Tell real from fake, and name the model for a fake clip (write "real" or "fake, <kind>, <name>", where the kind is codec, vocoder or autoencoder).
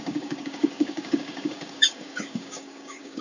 fake, codec, DAC